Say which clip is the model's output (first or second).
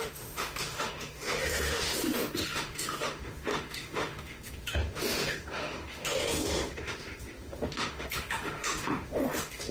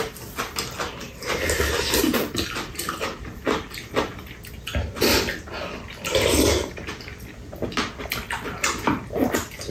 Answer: first